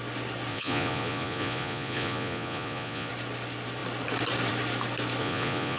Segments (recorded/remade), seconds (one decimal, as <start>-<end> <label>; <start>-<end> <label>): 0.0-0.5 recorded; 0.5-3.1 remade; 3.1-5.2 recorded; 5.2-5.8 remade